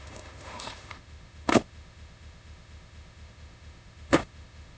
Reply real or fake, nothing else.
fake